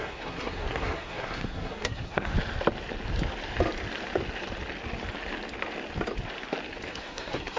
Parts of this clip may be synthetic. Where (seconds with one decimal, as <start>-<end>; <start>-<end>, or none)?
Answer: 0.0-2.3; 6.9-7.6